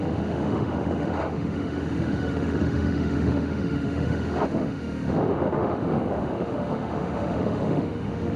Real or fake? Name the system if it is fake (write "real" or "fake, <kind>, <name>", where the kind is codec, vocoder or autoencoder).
fake, autoencoder, DAC-VAE